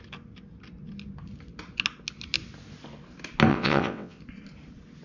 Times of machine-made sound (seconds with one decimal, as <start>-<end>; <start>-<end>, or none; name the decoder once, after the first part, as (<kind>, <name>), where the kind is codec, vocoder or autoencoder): 3.5-4.2 (vocoder, WaveNeXt)